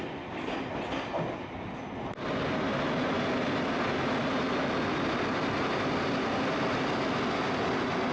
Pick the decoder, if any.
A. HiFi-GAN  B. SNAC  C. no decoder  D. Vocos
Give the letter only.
C